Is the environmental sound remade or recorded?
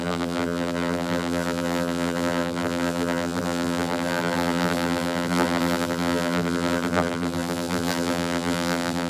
remade